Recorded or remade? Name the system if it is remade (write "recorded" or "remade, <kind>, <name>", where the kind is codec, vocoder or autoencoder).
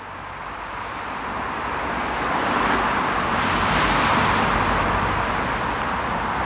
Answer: recorded